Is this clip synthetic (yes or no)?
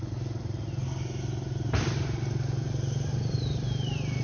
no